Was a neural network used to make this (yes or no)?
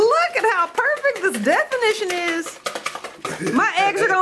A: no